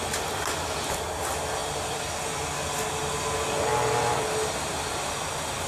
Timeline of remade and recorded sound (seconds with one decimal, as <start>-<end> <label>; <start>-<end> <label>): 0.0-5.7 recorded